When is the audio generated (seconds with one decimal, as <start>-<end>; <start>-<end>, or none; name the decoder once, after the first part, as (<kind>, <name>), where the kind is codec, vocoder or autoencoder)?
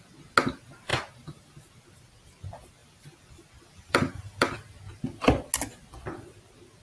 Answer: 2.8-4.8 (vocoder, BigVGAN v2)